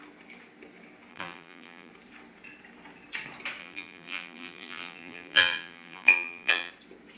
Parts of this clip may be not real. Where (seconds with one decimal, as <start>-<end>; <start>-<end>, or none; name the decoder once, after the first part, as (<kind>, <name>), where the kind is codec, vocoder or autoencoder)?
1.1-1.9 (vocoder, BigVGAN v2); 3.6-6.7